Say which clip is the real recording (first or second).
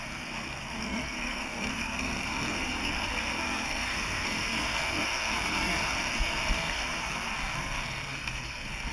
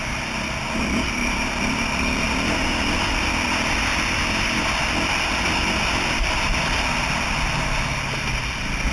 second